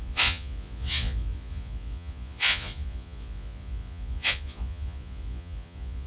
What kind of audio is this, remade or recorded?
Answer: remade